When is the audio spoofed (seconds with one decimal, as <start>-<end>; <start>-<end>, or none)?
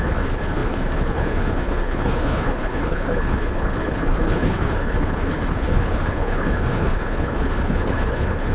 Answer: 0.0-8.5